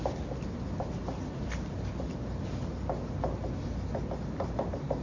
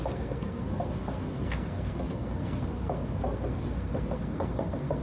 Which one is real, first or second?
first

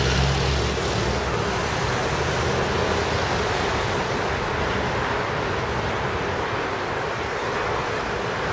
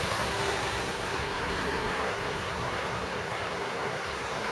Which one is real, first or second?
first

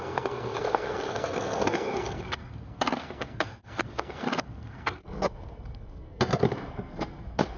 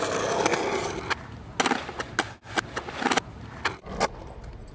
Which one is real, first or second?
second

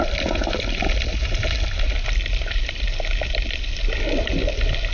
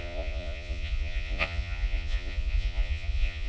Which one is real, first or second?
first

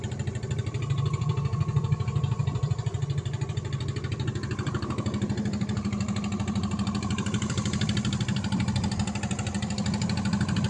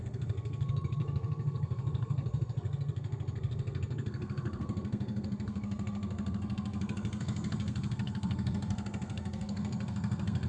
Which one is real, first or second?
first